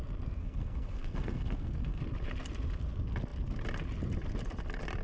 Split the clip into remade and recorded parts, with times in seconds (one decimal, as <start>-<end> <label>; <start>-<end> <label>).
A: 0.0-0.4 recorded; 0.4-2.0 remade; 2.0-5.0 recorded